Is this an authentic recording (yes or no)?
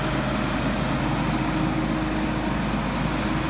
yes